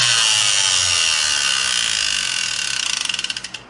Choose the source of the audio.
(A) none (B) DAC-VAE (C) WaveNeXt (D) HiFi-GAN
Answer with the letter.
A